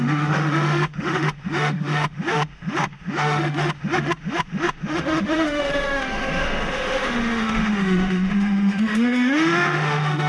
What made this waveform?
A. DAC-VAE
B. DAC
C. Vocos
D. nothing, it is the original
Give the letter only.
A